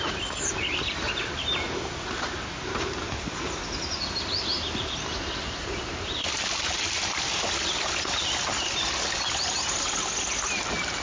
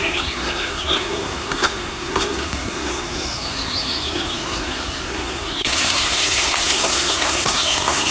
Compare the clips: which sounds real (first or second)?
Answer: first